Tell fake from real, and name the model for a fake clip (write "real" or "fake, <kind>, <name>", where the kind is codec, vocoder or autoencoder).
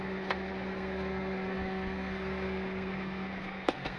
fake, codec, SNAC